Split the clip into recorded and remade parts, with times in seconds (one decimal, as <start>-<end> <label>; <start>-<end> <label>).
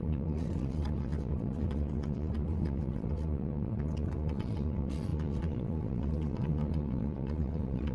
0.0-7.9 remade